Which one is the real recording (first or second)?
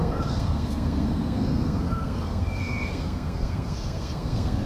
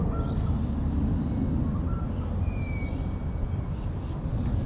second